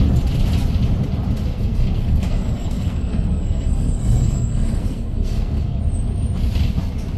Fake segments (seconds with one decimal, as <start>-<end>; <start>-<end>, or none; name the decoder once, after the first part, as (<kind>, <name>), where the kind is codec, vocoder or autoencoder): 1.5-5.8 (codec, SNAC)